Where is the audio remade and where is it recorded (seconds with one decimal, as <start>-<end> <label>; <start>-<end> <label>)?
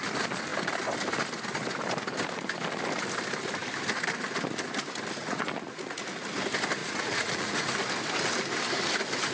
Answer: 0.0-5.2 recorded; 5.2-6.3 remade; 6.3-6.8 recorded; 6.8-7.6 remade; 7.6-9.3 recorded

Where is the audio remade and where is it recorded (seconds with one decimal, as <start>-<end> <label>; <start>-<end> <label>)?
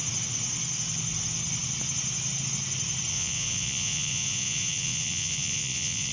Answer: 0.0-3.1 recorded; 3.1-6.1 remade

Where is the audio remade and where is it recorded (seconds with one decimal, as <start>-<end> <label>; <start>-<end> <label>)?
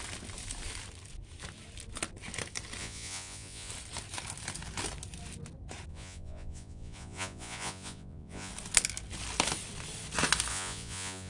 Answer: 0.0-2.8 recorded; 2.8-3.7 remade; 3.7-5.9 recorded; 5.9-8.5 remade; 8.5-10.5 recorded; 10.5-11.3 remade